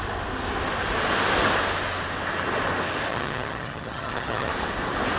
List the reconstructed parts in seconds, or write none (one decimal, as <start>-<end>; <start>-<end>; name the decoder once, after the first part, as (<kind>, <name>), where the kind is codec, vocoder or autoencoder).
3.1-4.5 (vocoder, HiFi-GAN)

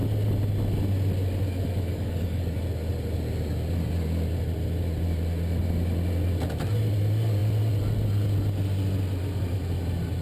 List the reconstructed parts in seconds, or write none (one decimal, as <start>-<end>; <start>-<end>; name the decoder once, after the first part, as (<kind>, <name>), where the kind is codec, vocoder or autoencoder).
1.9-2.5 (codec, DAC)

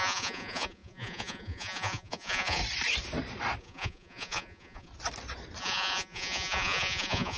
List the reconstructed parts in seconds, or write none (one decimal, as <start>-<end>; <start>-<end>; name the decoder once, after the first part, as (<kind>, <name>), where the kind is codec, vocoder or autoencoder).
0.0-2.6 (vocoder, Vocos); 3.6-4.9; 5.6-7.4